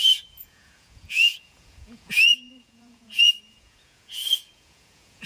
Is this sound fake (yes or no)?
yes